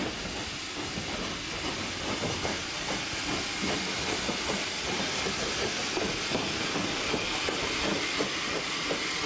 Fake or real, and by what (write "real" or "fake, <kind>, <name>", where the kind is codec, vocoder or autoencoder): real